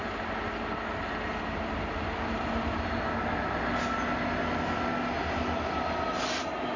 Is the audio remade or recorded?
recorded